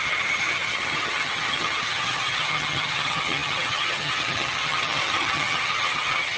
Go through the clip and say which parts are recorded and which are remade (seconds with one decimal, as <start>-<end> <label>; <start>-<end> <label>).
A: 0.0-6.4 remade